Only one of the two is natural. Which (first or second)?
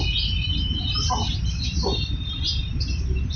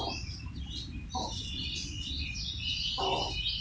second